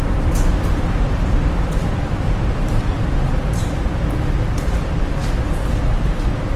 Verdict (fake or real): real